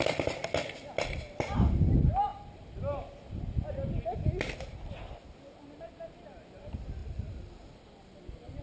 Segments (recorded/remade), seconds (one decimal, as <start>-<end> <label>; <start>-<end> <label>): 0.0-7.0 recorded; 7.0-8.6 remade